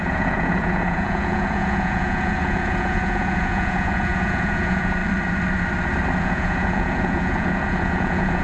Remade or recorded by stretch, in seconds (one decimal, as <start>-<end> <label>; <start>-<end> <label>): 0.0-5.0 remade; 5.0-6.2 recorded; 6.2-8.4 remade